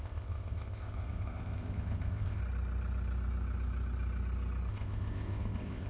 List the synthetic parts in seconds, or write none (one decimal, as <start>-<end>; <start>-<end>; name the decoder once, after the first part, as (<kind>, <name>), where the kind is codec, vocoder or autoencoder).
0.0-2.4 (codec, ZipCodec); 4.7-5.9